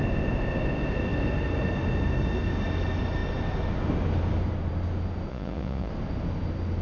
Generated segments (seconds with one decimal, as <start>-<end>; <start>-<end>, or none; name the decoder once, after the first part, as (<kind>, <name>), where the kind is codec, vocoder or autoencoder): 5.3-5.9 (vocoder, Vocos)